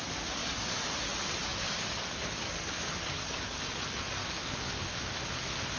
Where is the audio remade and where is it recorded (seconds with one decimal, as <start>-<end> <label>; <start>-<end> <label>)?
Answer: 0.0-0.4 recorded; 0.4-0.9 remade; 0.9-1.5 recorded; 1.5-5.0 remade; 5.0-5.8 recorded